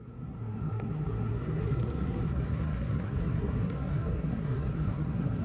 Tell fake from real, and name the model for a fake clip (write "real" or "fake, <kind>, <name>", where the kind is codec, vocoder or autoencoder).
fake, codec, SNAC